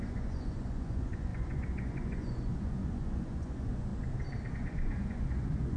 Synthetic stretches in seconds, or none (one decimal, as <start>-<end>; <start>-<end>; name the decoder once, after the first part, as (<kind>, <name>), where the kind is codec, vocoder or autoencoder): 0.0-3.9 (vocoder, Vocos); 4.5-5.8

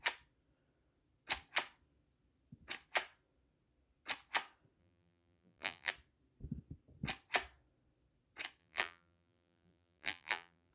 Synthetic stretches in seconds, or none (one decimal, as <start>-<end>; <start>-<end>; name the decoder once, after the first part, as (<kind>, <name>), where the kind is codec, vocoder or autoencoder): 4.8-5.9 (vocoder, BigVGAN v2); 8.6-10.7

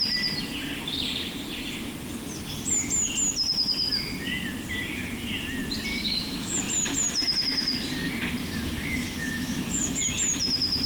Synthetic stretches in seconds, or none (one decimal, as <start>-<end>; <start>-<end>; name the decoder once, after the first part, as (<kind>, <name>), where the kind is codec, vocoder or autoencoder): 5.9-6.6 (autoencoder, DAC-VAE); 8.4-10.0

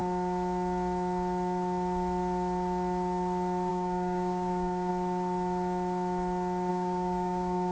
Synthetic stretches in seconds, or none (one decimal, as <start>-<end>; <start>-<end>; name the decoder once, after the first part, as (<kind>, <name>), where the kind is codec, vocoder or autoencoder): 3.7-4.9 (codec, DAC); 6.7-7.7

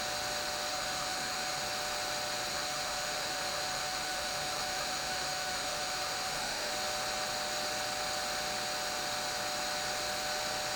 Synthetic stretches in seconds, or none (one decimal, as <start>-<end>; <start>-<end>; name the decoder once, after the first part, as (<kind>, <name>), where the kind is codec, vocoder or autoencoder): 0.7-1.6 (autoencoder, DAC-VAE); 2.5-6.7